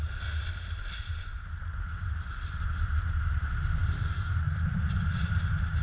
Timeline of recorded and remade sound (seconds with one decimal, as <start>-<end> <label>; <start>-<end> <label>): 0.0-5.8 recorded